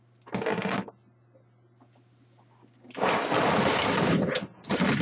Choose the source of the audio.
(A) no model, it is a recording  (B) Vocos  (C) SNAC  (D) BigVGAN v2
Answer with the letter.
A